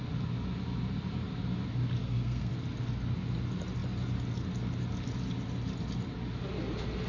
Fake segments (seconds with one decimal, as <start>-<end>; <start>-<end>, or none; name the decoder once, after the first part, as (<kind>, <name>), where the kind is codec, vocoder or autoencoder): 2.0-2.5 (codec, SNAC)